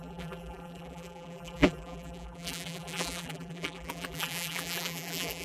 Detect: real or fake fake